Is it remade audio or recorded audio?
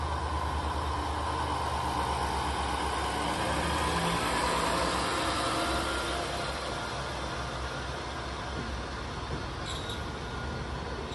recorded